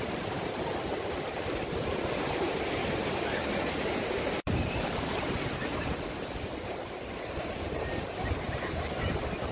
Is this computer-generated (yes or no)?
yes